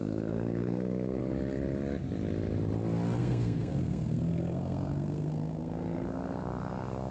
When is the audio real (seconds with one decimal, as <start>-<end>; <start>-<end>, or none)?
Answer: 1.2-3.2